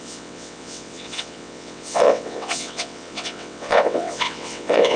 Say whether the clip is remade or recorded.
remade